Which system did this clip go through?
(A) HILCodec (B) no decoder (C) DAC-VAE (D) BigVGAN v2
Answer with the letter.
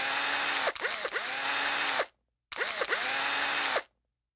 B